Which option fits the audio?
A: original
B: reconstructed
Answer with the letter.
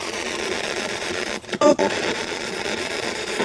B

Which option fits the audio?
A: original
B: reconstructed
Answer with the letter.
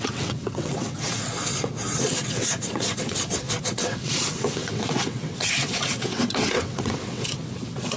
B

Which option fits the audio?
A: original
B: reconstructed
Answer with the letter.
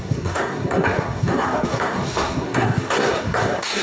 B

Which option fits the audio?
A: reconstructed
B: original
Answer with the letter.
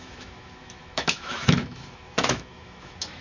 A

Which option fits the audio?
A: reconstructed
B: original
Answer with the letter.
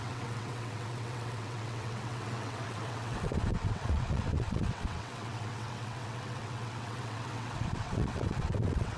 A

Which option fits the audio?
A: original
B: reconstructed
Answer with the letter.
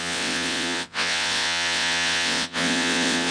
B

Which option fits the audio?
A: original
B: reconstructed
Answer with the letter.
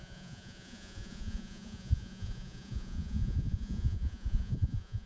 B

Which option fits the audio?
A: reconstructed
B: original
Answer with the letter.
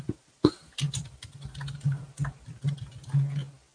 B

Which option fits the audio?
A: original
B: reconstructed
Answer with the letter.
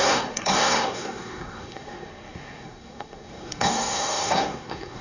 B